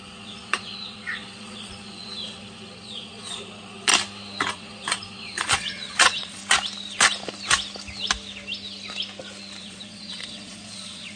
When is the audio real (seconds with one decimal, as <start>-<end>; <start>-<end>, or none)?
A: 3.9-4.5; 6.4-9.6